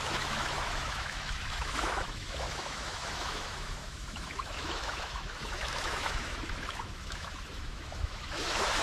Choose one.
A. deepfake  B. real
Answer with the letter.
A